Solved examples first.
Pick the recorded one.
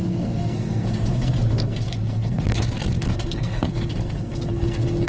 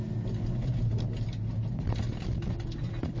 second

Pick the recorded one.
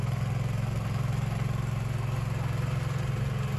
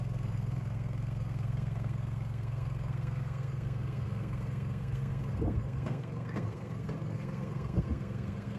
first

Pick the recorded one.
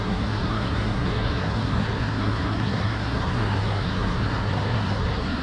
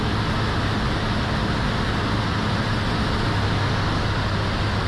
second